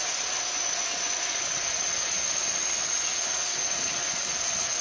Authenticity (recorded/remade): remade